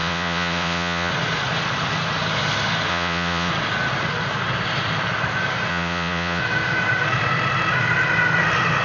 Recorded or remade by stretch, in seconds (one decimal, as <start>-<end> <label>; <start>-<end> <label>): 0.0-1.1 remade; 1.1-2.9 recorded; 2.9-3.5 remade; 3.5-5.7 recorded; 5.7-6.4 remade; 6.4-8.8 recorded